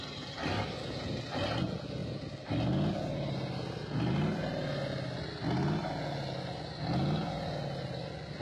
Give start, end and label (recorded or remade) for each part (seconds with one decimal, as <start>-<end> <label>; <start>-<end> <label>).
0.0-8.4 recorded

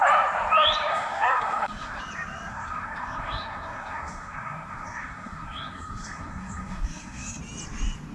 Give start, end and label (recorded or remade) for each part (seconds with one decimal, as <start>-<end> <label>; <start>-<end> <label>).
0.0-0.9 recorded; 0.9-2.0 remade; 2.0-2.5 recorded; 2.5-7.4 remade; 7.4-8.1 recorded

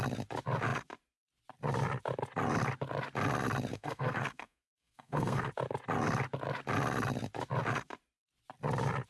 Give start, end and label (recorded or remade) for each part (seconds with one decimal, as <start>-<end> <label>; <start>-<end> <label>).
0.0-3.7 recorded; 3.7-5.5 remade; 5.5-9.1 recorded

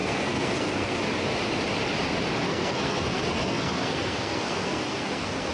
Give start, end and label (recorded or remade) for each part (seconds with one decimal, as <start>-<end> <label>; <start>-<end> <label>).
0.0-1.0 remade; 1.0-2.5 recorded; 2.5-5.5 remade

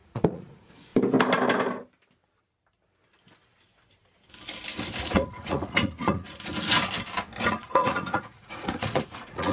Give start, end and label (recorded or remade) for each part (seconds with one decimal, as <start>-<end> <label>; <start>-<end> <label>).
0.0-0.9 remade; 0.9-5.0 recorded; 5.0-6.5 remade; 6.5-7.5 recorded; 7.5-9.5 remade

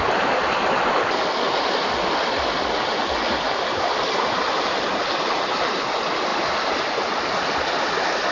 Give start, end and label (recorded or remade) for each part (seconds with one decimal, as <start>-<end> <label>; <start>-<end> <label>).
0.0-8.3 recorded

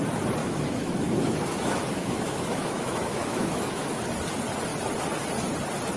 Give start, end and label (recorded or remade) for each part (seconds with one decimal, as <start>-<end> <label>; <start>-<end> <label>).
0.0-0.4 recorded; 0.4-4.0 remade; 4.0-6.0 recorded